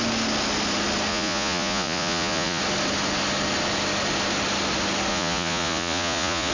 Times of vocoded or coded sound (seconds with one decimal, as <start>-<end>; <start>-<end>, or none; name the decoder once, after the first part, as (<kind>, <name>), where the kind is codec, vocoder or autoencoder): 1.1-2.6 (vocoder, Vocos); 5.1-6.5